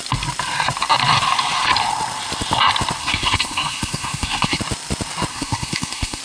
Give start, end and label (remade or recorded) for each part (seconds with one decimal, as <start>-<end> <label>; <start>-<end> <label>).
0.0-3.0 recorded; 3.0-4.6 remade; 4.6-5.3 recorded; 5.3-6.2 remade